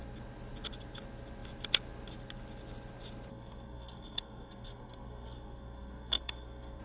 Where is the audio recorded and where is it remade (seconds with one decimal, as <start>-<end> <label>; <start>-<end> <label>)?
0.0-3.3 recorded; 3.3-6.8 remade